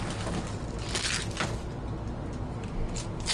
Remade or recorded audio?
recorded